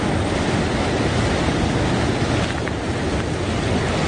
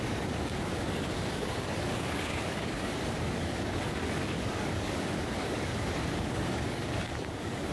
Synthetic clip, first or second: second